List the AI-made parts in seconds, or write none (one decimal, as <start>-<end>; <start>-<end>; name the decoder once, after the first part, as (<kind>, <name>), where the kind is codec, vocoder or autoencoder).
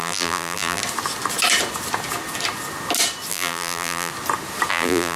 0.0-0.8 (vocoder, BigVGAN v2); 3.3-4.1; 4.7-5.2